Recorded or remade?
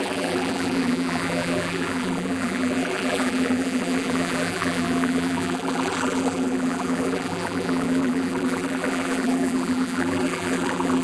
remade